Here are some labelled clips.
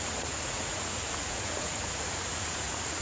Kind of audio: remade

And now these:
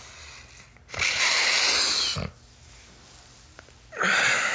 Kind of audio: recorded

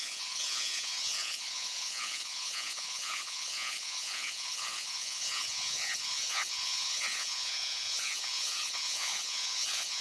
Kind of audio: remade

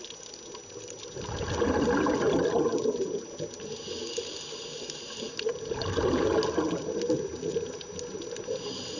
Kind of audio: recorded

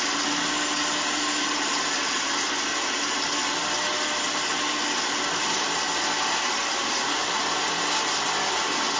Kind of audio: recorded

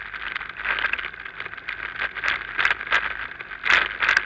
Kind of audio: recorded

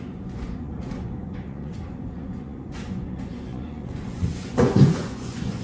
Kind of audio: remade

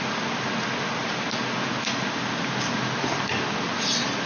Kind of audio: recorded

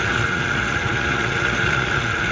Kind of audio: remade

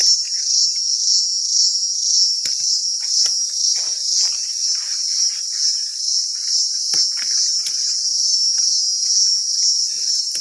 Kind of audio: recorded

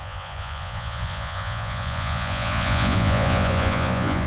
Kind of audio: remade